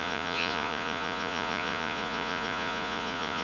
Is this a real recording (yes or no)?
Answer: no